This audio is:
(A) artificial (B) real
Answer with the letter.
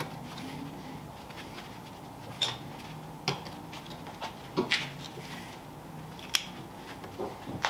B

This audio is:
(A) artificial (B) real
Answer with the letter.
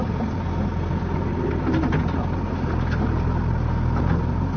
B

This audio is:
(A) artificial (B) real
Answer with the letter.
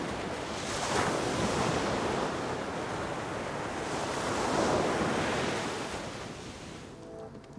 B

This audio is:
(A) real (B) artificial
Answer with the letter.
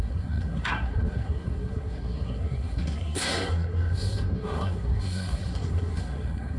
B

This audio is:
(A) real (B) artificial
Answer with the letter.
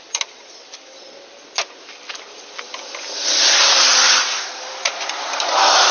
A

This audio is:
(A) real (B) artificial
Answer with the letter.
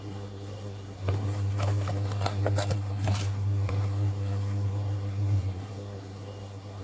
B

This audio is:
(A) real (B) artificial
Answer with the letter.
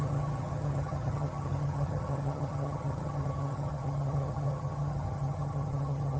B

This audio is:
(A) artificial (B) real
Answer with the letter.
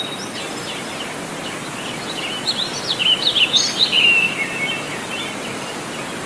B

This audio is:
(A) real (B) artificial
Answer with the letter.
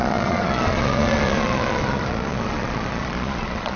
B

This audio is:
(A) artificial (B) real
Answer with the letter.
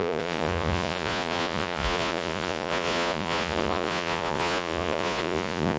A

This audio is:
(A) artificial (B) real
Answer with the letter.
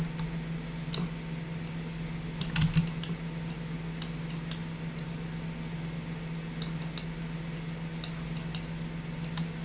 B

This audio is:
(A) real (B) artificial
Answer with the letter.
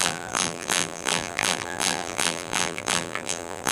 B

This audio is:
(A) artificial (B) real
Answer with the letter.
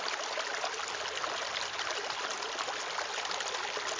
B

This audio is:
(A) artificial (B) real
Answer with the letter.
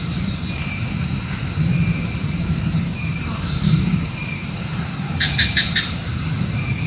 A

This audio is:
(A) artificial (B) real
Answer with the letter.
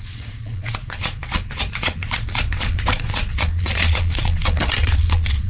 A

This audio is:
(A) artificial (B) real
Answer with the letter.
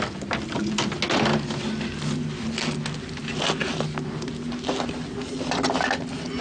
B